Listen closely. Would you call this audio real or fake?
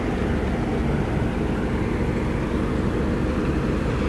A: real